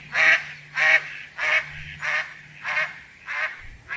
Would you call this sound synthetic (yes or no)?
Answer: no